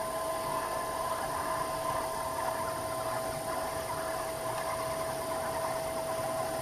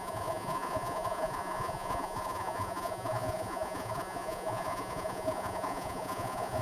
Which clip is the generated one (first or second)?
second